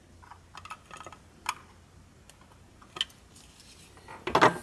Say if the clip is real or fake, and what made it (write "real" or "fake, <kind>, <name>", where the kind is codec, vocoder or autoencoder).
real